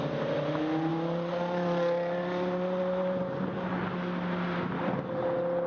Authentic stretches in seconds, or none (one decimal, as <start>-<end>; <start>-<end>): 0.0-0.9; 3.2-5.7